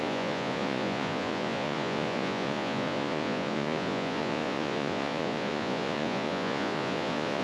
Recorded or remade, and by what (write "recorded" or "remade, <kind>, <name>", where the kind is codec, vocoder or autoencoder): remade, vocoder, Vocos